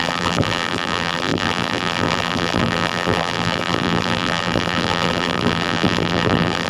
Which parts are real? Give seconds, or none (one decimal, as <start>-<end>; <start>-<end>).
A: none